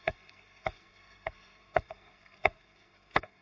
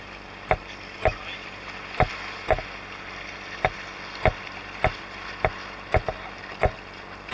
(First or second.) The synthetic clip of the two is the first